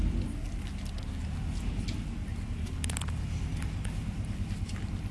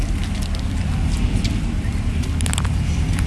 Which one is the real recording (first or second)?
first